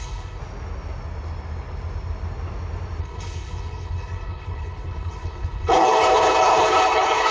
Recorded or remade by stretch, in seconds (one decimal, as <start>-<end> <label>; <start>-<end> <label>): 0.0-0.4 remade; 0.4-3.0 recorded; 3.0-7.3 remade

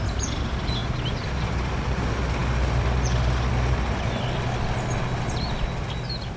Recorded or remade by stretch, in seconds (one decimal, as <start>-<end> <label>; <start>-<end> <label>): 0.0-6.4 recorded

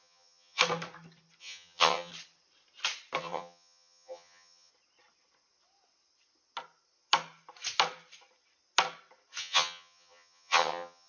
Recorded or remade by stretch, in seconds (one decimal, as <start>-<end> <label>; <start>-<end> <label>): 0.0-0.6 remade; 0.6-1.4 recorded; 1.4-2.1 remade; 2.1-3.2 recorded; 3.2-4.7 remade; 4.7-9.4 recorded; 9.4-11.1 remade

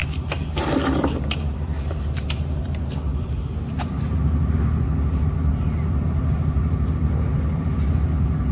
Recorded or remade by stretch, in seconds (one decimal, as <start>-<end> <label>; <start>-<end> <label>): 0.0-8.5 remade

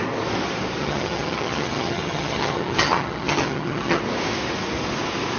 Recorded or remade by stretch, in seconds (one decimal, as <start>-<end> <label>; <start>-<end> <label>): 0.0-0.8 recorded; 0.8-4.0 remade; 4.0-5.4 recorded

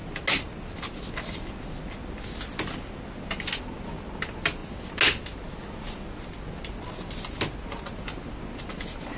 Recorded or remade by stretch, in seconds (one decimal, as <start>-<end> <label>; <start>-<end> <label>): 0.0-9.2 recorded

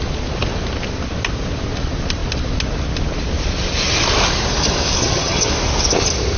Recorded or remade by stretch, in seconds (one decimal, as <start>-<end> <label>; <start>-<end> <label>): 0.0-5.0 recorded; 5.0-5.5 remade; 5.5-6.4 recorded